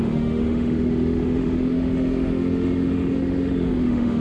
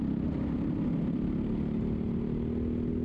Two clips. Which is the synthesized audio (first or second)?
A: first